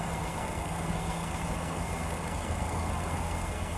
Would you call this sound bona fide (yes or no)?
no